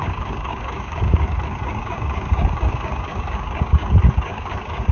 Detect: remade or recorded remade